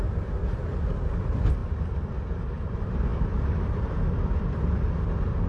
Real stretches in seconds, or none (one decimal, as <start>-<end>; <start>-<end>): none